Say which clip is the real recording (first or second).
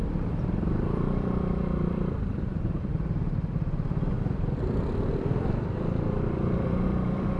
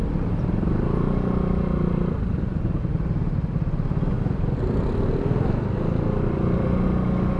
second